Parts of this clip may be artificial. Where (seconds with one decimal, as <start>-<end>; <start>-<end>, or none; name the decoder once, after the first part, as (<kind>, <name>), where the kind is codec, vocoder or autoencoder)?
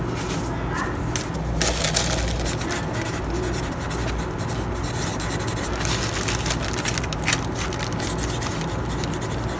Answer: none